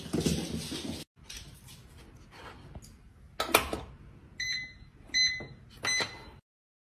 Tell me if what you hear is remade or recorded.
recorded